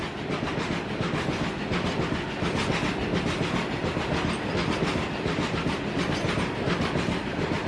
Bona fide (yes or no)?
yes